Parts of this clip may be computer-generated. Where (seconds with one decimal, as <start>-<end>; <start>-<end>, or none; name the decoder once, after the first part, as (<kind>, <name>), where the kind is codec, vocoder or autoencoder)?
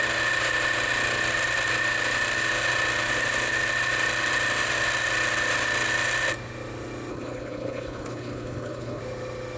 7.1-9.0 (codec, HILCodec)